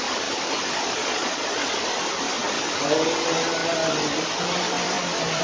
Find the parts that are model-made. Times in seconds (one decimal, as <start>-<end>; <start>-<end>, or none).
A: 1.0-1.6